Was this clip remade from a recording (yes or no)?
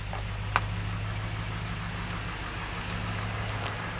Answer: no